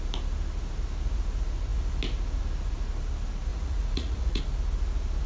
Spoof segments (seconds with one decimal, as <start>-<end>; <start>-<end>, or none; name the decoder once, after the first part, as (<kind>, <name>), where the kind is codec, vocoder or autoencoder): 3.5-4.4 (vocoder, Vocos)